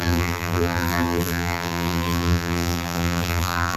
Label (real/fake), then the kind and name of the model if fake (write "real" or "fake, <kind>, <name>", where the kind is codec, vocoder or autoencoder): fake, vocoder, BigVGAN v2